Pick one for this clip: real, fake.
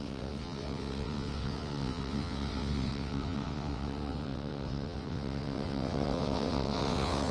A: fake